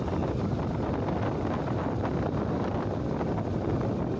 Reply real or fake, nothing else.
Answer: real